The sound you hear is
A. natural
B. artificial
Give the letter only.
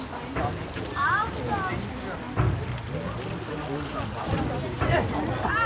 A